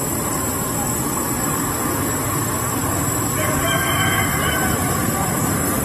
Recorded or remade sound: remade